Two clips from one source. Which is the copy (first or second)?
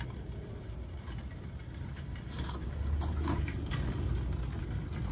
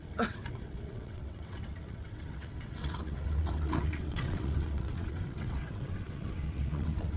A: second